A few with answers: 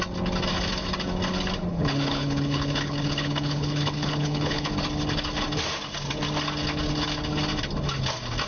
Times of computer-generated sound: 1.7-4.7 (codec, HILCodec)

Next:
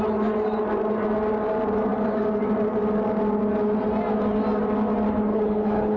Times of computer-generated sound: 5.3-6.0 (codec, HILCodec)

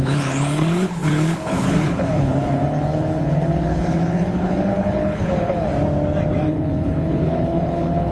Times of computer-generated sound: 0.0-5.7 (codec, HILCodec); 6.4-8.1

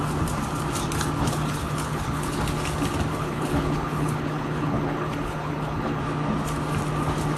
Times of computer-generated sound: 1.2-2.4 (codec, HILCodec); 3.1-6.0

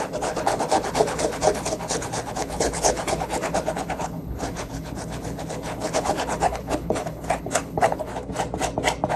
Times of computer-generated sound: 0.0-8.1 (codec, HILCodec)

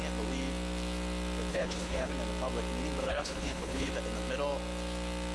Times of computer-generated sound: 1.5-2.1 (codec, HILCodec); 3.0-3.9

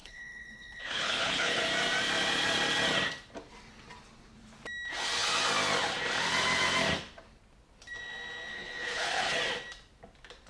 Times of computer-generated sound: 0.0-1.6 (codec, HILCodec); 8.5-9.4